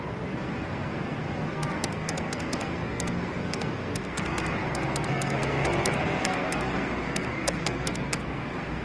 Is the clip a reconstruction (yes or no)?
yes